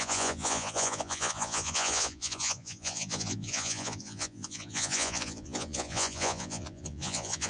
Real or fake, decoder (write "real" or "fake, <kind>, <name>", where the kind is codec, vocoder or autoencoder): fake, vocoder, Vocos